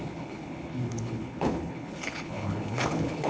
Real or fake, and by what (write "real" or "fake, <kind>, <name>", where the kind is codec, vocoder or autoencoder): fake, codec, HILCodec